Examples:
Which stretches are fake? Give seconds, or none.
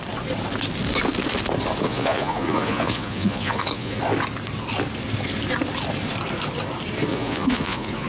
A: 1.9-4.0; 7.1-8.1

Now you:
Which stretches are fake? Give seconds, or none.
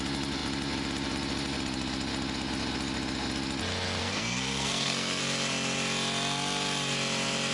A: 4.0-5.2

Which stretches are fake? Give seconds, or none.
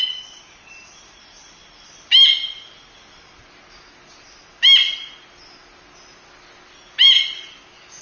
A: none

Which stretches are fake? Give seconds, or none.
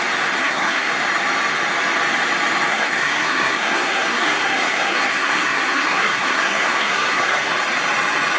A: 0.4-0.9; 2.7-7.5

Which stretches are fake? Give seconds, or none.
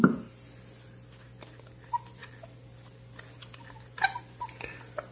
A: none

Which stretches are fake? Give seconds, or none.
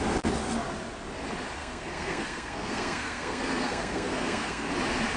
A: 1.6-4.7